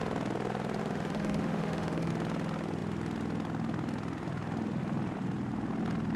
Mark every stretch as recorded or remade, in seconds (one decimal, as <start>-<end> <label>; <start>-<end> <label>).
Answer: 0.0-0.8 recorded; 0.8-2.1 remade; 2.1-6.2 recorded